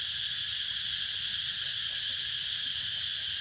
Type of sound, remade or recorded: recorded